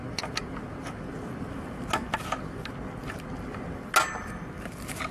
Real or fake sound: real